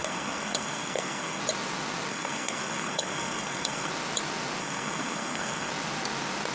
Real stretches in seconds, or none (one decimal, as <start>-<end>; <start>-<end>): 1.4-2.1; 3.9-4.6; 5.7-6.5